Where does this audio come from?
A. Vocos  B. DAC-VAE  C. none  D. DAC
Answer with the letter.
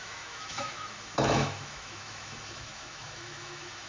B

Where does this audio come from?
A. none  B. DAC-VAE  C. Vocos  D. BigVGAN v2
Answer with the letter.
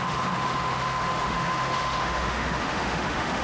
B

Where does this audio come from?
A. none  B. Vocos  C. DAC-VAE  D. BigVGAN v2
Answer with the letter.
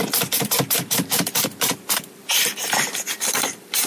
D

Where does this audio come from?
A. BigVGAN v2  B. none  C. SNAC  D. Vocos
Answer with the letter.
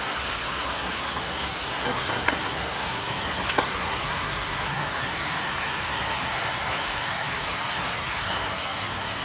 C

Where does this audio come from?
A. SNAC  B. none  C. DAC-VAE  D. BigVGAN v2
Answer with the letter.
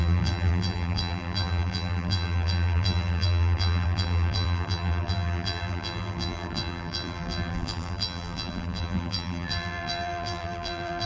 D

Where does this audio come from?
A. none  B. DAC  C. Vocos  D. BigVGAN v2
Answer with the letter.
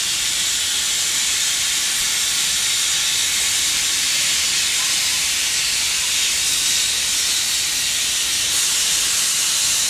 A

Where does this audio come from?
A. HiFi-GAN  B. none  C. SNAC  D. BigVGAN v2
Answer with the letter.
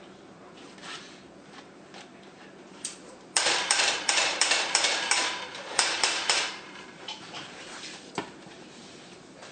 D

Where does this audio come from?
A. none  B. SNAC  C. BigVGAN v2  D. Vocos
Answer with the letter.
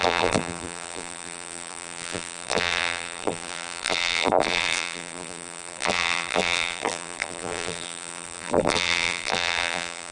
C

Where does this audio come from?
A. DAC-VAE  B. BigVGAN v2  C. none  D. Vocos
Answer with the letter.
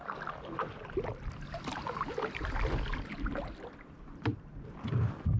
B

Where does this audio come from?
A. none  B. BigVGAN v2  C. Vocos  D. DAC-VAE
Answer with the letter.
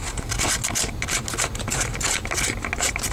A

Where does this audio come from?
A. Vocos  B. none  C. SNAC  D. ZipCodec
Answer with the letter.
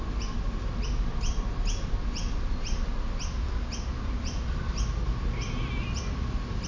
B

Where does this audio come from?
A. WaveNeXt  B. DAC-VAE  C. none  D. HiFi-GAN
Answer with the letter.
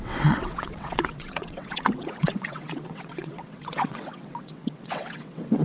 A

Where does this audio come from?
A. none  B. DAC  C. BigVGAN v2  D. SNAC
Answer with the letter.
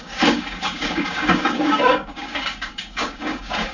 B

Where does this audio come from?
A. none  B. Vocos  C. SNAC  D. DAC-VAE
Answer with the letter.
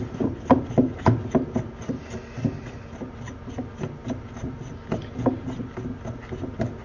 A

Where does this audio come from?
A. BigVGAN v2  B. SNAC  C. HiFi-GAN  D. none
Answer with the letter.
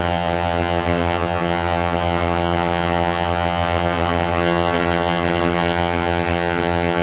C